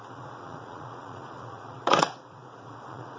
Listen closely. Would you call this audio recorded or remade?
remade